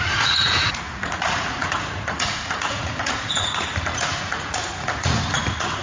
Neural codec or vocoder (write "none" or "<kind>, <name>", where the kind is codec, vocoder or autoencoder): vocoder, Vocos